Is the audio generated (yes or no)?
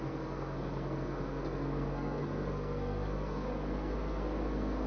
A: yes